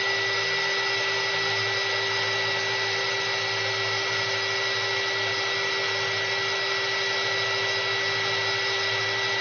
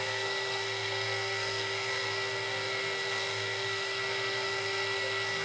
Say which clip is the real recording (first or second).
first